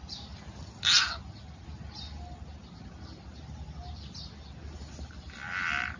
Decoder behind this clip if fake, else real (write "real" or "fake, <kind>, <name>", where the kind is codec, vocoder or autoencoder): real